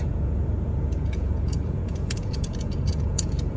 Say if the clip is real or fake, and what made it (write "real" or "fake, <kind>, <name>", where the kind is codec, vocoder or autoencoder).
fake, vocoder, Vocos